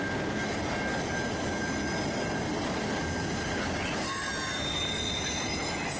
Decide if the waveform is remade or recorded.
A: recorded